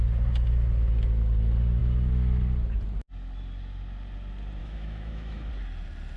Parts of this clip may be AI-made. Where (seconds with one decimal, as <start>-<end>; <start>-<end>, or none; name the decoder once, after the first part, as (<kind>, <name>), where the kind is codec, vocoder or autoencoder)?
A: 4.6-5.5 (autoencoder, DAC-VAE)